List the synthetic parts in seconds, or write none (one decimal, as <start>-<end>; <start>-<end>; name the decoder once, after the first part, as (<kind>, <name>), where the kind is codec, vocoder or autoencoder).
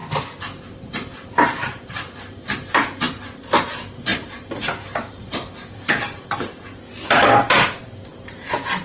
4.1-6.3 (vocoder, BigVGAN v2)